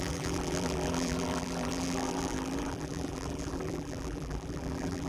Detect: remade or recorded remade